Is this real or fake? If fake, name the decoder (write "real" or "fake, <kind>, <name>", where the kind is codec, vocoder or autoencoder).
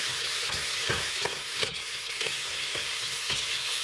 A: fake, codec, SNAC